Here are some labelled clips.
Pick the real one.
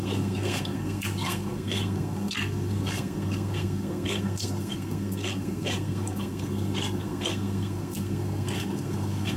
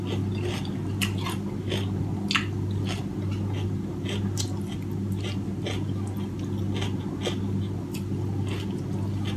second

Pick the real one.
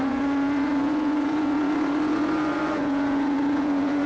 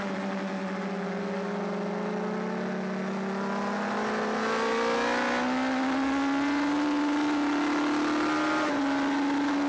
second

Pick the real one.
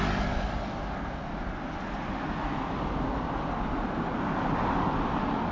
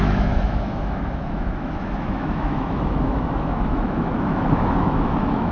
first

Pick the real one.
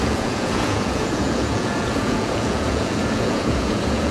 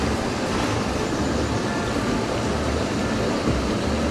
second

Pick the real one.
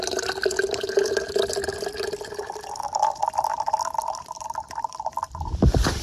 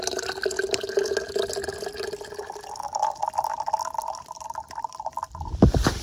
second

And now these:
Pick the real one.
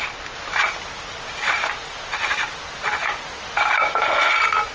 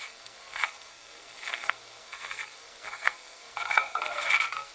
first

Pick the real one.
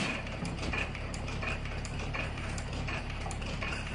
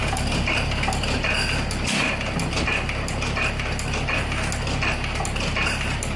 second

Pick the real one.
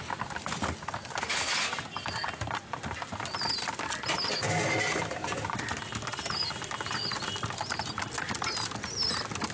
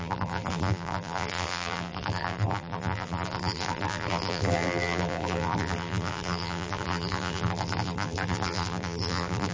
first